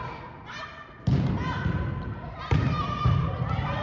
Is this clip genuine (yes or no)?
yes